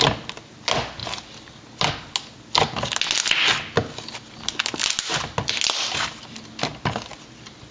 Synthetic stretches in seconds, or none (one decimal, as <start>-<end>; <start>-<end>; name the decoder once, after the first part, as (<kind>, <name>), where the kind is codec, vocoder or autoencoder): none